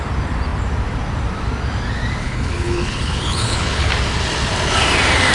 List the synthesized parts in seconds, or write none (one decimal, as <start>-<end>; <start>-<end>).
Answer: 2.2-3.9